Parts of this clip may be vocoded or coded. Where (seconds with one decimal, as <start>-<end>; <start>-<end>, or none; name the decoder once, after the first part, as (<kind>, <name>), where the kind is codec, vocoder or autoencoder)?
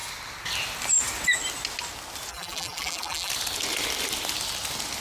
2.3-3.3 (vocoder, BigVGAN v2)